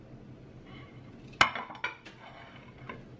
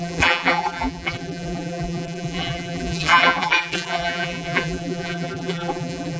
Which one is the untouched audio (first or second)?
first